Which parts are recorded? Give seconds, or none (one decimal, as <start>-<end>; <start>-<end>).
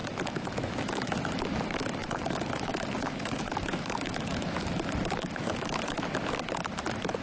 1.3-2.0; 6.0-7.2